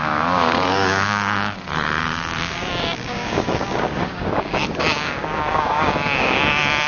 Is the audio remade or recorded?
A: remade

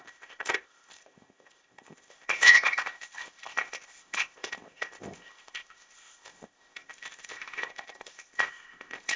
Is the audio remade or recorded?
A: remade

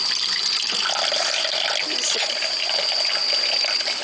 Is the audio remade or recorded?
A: recorded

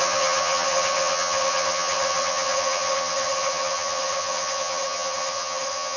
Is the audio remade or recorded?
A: remade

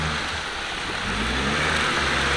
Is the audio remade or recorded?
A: recorded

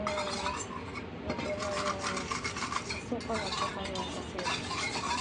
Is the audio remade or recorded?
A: remade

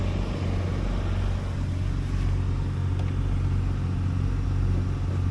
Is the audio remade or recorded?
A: recorded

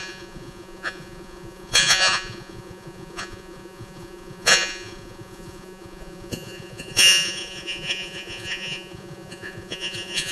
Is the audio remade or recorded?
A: remade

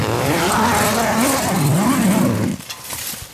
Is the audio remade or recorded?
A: recorded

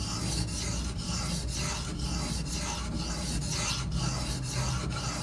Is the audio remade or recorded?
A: recorded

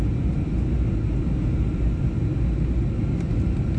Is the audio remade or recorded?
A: recorded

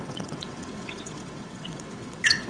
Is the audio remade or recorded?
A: remade